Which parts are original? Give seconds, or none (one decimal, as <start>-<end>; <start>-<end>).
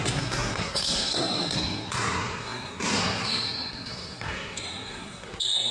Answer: none